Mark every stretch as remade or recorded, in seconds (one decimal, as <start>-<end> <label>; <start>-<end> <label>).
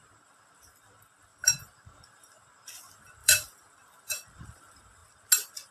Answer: 0.0-1.3 recorded; 1.3-2.2 remade; 2.2-3.2 recorded; 3.2-4.6 remade; 4.6-5.7 recorded